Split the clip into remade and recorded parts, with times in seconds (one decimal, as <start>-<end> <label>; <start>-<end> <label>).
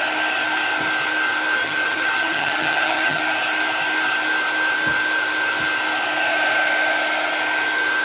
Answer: 0.0-1.6 recorded; 1.6-3.2 remade; 3.2-8.0 recorded